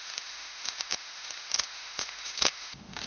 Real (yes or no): no